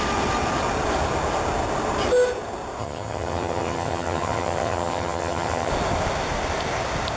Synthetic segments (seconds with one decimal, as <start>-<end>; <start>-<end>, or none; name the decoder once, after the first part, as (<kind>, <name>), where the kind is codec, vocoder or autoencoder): 2.8-5.7 (vocoder, HiFi-GAN)